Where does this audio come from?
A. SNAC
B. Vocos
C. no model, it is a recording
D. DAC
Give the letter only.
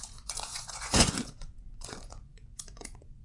B